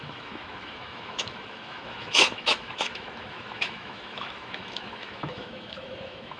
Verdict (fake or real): fake